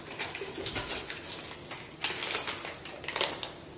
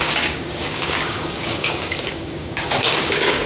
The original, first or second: first